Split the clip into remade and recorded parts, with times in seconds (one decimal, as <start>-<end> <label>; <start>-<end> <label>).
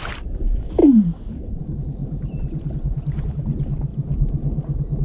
0.0-0.8 recorded; 0.8-1.6 remade; 1.6-2.0 recorded; 2.0-3.3 remade; 3.3-5.0 recorded